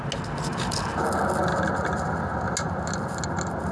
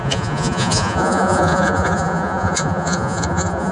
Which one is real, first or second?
first